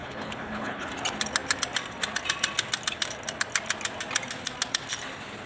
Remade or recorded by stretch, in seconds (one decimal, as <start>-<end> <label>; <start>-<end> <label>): 0.0-0.9 remade; 0.9-5.5 recorded